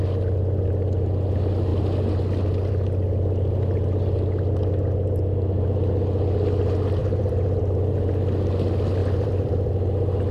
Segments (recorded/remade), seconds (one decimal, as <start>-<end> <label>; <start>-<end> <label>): 0.0-7.0 recorded; 7.0-7.6 remade; 7.6-9.0 recorded; 9.0-9.7 remade; 9.7-10.3 recorded